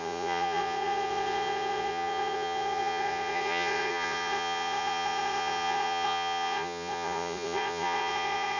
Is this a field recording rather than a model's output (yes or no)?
no